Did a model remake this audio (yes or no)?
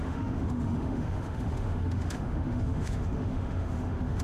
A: yes